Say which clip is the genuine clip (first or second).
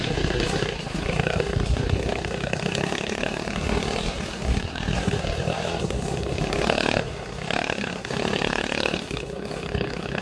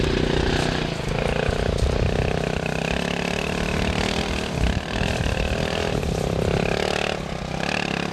second